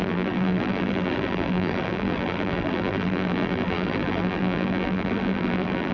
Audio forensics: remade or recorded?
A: remade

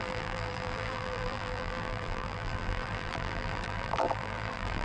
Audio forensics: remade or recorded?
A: remade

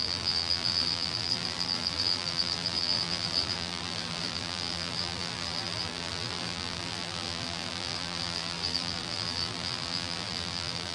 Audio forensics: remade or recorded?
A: remade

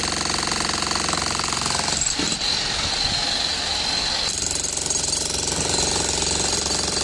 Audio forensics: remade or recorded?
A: recorded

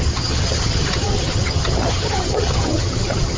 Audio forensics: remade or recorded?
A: remade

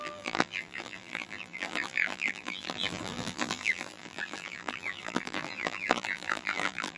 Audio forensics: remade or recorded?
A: remade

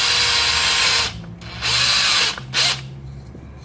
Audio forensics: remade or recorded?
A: recorded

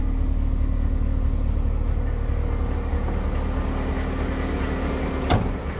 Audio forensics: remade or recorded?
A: recorded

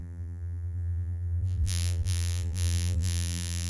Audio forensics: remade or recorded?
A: remade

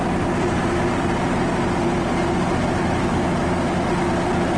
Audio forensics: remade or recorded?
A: recorded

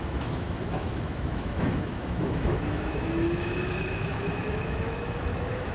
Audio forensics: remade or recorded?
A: remade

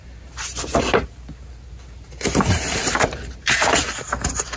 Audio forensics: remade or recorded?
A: remade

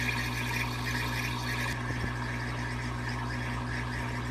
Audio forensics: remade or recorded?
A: recorded